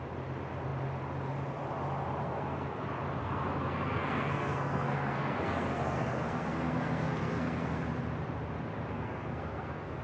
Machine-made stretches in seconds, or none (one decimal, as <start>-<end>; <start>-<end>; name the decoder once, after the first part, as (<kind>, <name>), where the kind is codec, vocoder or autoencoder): 2.2-2.8 (codec, SNAC); 3.2-7.8; 8.9-10.0